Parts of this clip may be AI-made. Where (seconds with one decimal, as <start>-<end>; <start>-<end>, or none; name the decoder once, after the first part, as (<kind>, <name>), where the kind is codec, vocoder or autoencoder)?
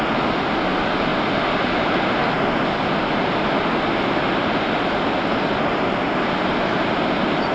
none